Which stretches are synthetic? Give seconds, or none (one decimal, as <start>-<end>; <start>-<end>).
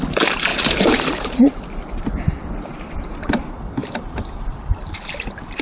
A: 0.5-2.1; 2.7-3.4; 3.8-5.6